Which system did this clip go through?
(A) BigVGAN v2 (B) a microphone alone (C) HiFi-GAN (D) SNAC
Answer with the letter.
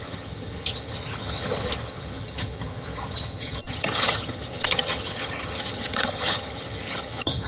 C